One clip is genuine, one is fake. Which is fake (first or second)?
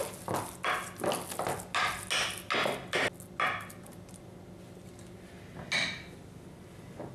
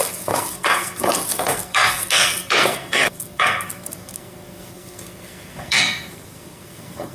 second